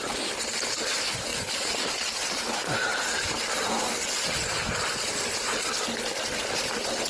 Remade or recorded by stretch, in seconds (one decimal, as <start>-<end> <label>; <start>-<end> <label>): 0.0-7.1 recorded